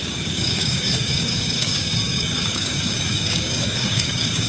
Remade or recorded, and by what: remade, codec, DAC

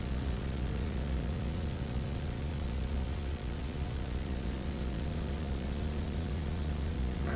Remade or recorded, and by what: remade, vocoder, Vocos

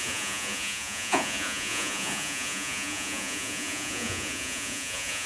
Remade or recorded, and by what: remade, vocoder, Vocos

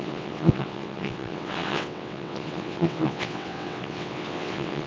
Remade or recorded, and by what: remade, vocoder, WaveNeXt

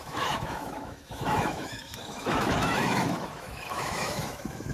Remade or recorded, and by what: remade, autoencoder, DAC-VAE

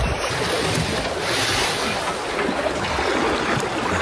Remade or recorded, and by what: recorded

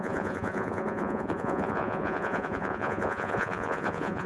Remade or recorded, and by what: remade, vocoder, Vocos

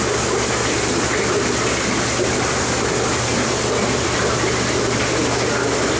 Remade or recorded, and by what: recorded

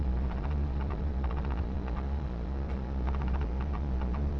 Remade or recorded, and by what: remade, vocoder, Vocos